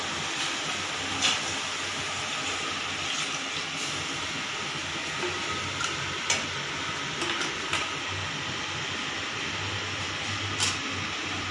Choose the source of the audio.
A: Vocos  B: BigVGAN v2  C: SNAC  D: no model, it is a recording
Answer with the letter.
D